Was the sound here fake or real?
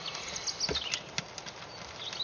real